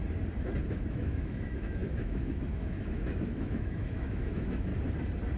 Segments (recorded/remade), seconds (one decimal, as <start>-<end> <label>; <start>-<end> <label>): 0.0-0.9 recorded; 0.9-4.7 remade; 4.7-5.4 recorded